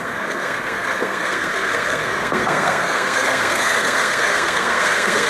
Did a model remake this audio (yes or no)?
yes